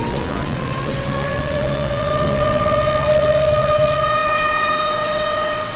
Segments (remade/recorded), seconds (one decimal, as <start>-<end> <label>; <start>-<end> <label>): 0.0-5.8 remade